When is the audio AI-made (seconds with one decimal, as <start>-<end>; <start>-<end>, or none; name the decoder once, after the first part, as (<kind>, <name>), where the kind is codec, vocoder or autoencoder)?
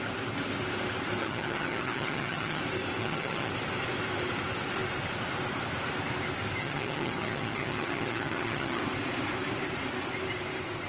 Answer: 1.2-2.6 (vocoder, HiFi-GAN); 3.0-3.5; 6.6-8.8